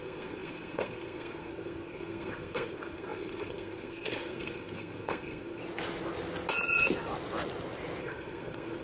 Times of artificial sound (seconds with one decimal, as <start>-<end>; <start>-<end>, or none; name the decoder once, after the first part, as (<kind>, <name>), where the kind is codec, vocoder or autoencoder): 0.0-5.6 (codec, SNAC); 8.0-8.8